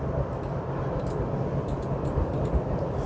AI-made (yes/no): no